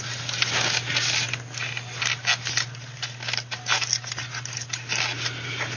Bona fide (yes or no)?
yes